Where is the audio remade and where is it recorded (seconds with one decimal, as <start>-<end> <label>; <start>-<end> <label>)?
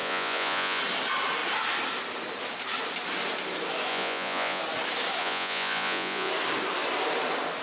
0.0-0.8 remade; 0.8-3.9 recorded; 3.9-4.6 remade; 4.6-5.2 recorded; 5.2-6.3 remade; 6.3-7.6 recorded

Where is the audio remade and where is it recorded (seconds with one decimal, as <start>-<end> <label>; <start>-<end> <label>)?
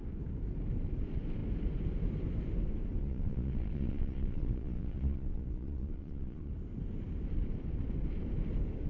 0.0-3.0 recorded; 3.0-6.5 remade; 6.5-8.9 recorded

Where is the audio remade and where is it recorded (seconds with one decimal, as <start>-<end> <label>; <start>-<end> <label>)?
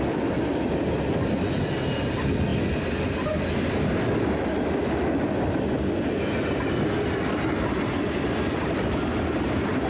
0.0-9.9 recorded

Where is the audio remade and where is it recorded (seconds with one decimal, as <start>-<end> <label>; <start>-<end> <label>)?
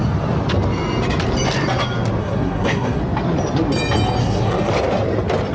0.0-2.2 recorded; 2.2-3.0 remade; 3.0-4.2 recorded; 4.2-4.7 remade; 4.7-5.5 recorded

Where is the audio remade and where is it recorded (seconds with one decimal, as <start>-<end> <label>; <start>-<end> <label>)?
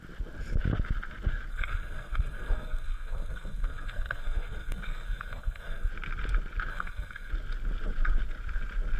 0.0-1.5 recorded; 1.5-5.9 remade; 5.9-6.7 recorded; 6.7-7.3 remade; 7.3-9.0 recorded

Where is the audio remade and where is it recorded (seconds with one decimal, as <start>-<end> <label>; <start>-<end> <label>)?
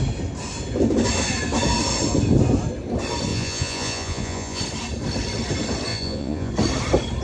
0.0-3.3 recorded; 3.3-4.6 remade; 4.6-5.9 recorded; 5.9-6.5 remade; 6.5-7.2 recorded